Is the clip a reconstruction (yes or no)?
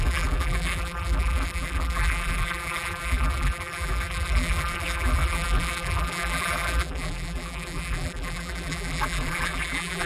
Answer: yes